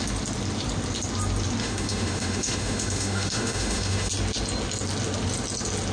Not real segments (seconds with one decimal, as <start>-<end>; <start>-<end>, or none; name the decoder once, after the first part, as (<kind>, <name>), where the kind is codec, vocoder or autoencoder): 1.6-4.1 (autoencoder, DAC-VAE)